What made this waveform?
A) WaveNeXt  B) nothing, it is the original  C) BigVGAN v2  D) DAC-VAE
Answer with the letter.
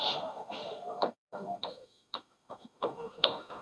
D